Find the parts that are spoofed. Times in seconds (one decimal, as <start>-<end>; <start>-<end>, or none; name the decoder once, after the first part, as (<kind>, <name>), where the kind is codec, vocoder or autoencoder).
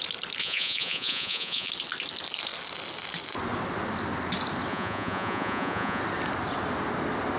0.4-1.7 (vocoder, Vocos); 4.7-6.0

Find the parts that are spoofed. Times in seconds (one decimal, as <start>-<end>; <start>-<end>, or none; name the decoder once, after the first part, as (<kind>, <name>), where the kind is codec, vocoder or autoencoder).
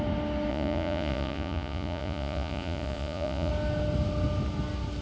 0.5-3.5 (vocoder, Vocos)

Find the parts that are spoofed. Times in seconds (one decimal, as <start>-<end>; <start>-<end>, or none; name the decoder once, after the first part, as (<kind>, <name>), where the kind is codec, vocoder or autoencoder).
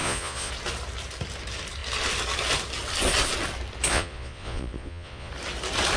0.0-0.5 (vocoder, Vocos); 3.9-5.3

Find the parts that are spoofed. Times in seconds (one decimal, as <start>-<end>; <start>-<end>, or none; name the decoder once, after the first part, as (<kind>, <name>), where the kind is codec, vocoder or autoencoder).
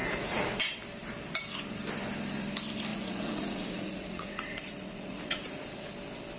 0.0-0.6 (vocoder, Vocos); 2.9-5.9